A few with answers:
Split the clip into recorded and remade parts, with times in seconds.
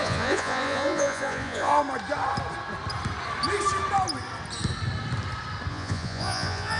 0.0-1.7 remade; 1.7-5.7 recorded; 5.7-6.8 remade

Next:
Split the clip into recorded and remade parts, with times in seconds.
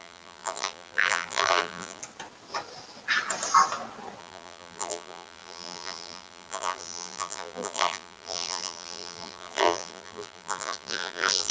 0.0-2.0 remade; 2.0-4.2 recorded; 4.2-11.5 remade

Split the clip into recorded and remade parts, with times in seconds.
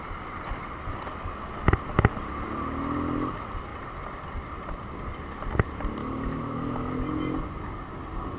0.0-6.0 recorded; 6.0-6.9 remade; 6.9-8.4 recorded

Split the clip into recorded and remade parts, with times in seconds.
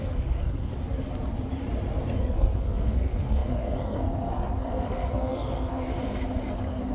0.0-0.7 remade; 0.7-2.2 recorded; 2.2-5.9 remade; 5.9-6.5 recorded; 6.5-6.9 remade